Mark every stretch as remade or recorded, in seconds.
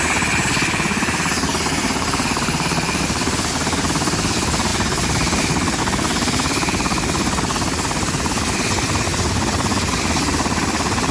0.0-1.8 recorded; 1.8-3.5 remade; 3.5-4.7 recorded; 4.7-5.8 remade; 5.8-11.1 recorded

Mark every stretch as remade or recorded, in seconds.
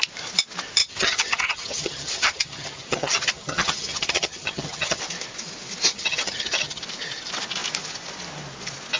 0.0-0.8 recorded; 0.8-5.0 remade; 5.0-5.9 recorded; 5.9-6.8 remade; 6.8-9.0 recorded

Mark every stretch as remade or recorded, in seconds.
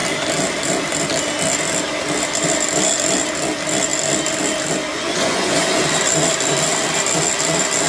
0.0-4.9 recorded; 4.9-5.8 remade; 5.8-7.9 recorded